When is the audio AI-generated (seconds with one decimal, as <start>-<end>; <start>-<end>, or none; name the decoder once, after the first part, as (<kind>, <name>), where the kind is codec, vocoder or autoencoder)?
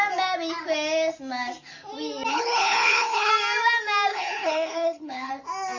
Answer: 2.3-3.3 (codec, HILCodec); 4.1-5.3